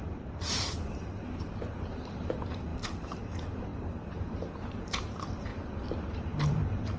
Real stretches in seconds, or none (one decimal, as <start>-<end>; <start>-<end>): 5.5-6.1